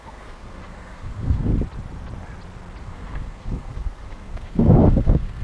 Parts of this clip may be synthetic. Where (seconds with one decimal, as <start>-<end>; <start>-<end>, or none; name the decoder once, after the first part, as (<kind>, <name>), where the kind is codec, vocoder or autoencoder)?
0.0-1.5 (codec, SNAC); 2.8-5.4